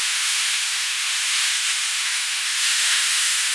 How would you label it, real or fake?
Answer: fake